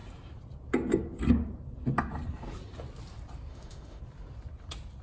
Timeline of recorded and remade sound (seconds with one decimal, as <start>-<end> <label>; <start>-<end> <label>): 0.0-3.5 recorded; 3.5-4.0 remade; 4.0-5.0 recorded